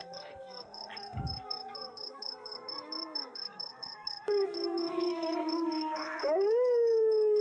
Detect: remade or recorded remade